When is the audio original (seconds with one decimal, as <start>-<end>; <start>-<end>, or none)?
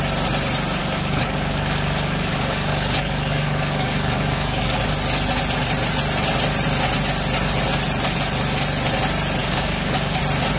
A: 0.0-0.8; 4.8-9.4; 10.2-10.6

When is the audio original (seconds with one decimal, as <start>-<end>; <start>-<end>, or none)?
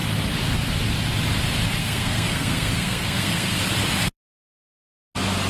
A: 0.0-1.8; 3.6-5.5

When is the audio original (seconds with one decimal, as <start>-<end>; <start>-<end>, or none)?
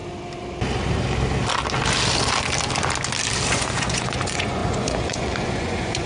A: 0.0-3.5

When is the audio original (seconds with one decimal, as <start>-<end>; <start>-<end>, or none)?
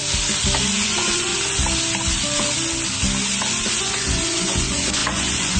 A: 0.0-0.8; 1.3-3.7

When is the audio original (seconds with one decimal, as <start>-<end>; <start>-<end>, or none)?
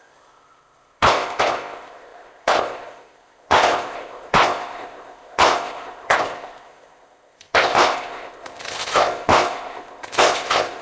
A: none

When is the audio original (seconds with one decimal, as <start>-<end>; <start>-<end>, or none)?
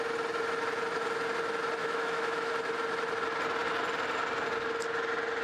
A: 0.0-1.8; 2.5-5.4